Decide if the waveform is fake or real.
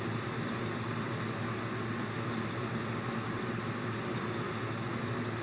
real